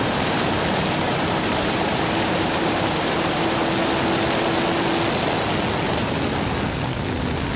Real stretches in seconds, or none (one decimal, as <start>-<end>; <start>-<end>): 3.6-7.6

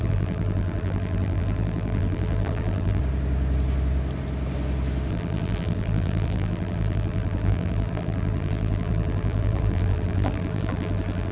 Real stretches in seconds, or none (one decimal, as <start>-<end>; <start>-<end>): 3.0-5.1